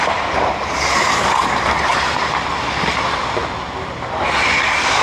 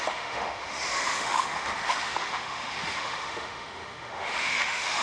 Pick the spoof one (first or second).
second